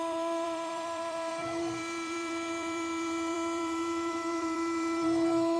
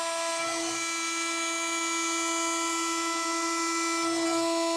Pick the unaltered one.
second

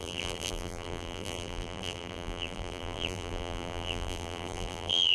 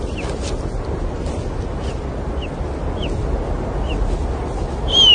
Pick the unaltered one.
second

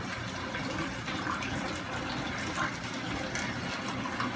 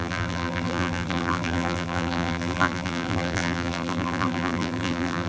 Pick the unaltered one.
first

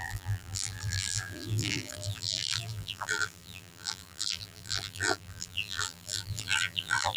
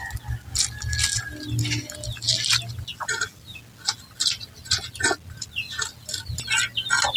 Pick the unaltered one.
second